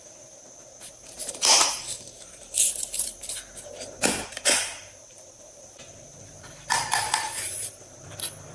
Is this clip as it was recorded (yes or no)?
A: no